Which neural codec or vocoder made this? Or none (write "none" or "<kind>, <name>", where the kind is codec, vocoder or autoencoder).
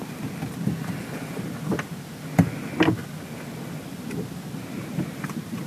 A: none